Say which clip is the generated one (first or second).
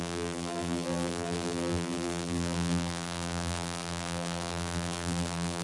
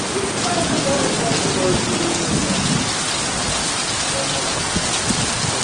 first